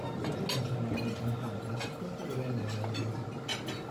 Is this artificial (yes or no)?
no